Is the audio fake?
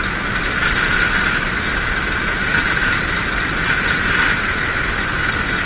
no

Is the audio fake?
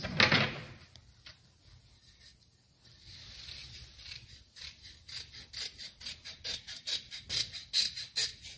no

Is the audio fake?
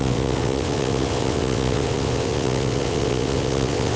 yes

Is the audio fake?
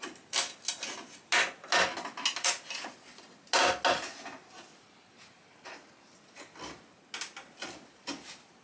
no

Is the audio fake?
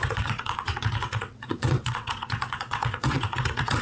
yes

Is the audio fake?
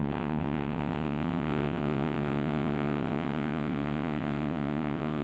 yes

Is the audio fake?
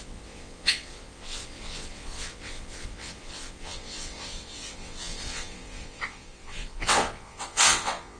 yes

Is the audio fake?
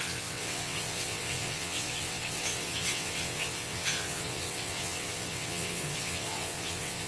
yes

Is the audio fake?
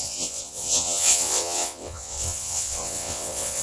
yes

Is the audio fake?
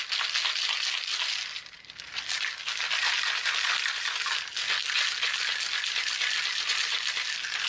no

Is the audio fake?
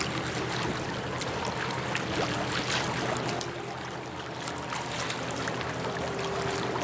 no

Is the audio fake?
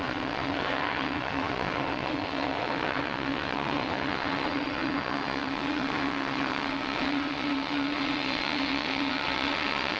yes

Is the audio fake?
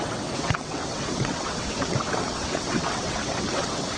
yes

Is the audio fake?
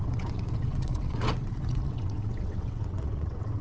yes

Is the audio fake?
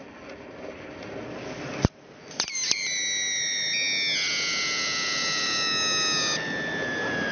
no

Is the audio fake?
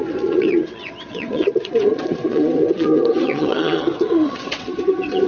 yes